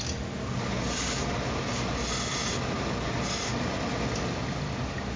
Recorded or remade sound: recorded